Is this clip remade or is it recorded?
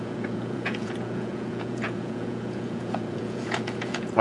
remade